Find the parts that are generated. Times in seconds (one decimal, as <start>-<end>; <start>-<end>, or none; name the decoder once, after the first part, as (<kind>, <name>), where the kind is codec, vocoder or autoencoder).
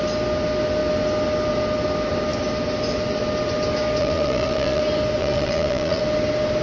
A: 4.0-4.8 (vocoder, Vocos); 5.2-6.0